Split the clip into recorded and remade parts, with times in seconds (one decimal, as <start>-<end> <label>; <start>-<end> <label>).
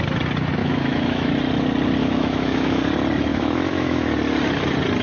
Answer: 0.0-0.6 recorded; 0.6-1.3 remade; 1.3-2.0 recorded; 2.0-2.8 remade; 2.8-3.3 recorded; 3.3-4.1 remade; 4.1-5.0 recorded